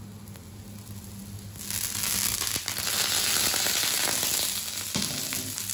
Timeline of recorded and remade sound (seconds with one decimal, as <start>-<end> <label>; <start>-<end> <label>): 0.0-5.7 recorded

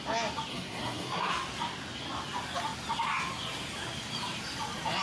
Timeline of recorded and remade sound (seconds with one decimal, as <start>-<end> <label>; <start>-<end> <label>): 0.0-0.5 recorded; 0.5-1.3 remade; 1.3-5.0 recorded

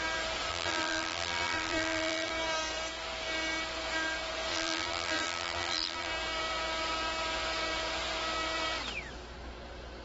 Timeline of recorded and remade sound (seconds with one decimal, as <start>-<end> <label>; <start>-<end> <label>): 0.0-0.5 recorded; 0.5-2.3 remade; 2.3-4.5 recorded; 4.5-6.1 remade; 6.1-10.0 recorded

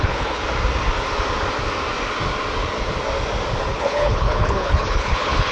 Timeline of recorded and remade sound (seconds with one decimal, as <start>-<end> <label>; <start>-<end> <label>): 0.0-0.4 remade; 0.4-3.7 recorded; 3.7-5.5 remade

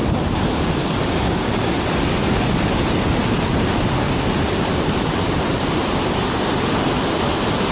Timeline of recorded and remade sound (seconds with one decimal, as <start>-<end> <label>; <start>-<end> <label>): 0.0-2.9 recorded; 2.9-5.8 remade; 5.8-7.2 recorded; 7.2-7.7 remade

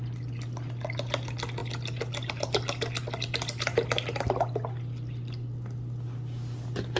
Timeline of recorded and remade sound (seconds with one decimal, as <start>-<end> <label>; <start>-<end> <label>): 0.0-7.0 recorded

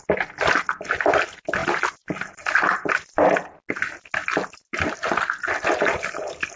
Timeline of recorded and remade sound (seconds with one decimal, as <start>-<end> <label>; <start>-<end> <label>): 0.0-6.6 recorded

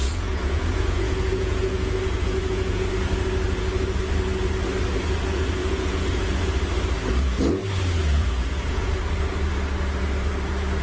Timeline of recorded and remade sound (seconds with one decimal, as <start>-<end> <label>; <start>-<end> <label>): 0.0-2.9 remade; 2.9-5.6 recorded; 5.6-6.4 remade; 6.4-8.0 recorded; 8.0-9.0 remade; 9.0-10.8 recorded